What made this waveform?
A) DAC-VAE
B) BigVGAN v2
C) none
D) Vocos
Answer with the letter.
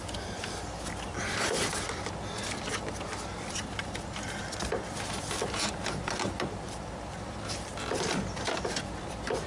B